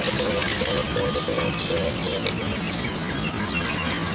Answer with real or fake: real